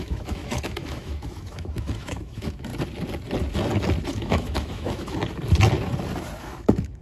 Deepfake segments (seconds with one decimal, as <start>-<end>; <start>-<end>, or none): 0.0-2.7; 4.1-5.2; 6.4-7.0